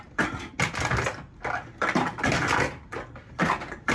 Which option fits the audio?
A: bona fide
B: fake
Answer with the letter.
A